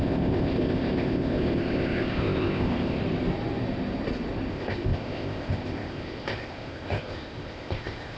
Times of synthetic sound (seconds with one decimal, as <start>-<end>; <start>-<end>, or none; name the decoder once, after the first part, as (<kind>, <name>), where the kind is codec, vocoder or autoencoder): 0.0-3.0 (codec, ZipCodec); 4.5-8.2